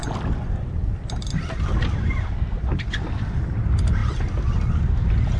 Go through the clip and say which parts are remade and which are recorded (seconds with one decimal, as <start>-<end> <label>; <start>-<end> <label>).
0.0-3.2 recorded; 3.2-4.0 remade; 4.0-5.4 recorded